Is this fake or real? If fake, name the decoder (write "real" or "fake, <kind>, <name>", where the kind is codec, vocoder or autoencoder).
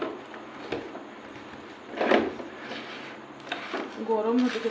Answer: real